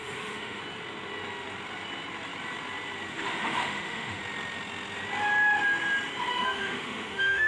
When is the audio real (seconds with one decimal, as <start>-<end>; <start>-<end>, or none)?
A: 0.6-3.1; 4.2-6.3